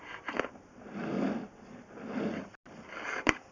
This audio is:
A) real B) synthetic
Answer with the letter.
A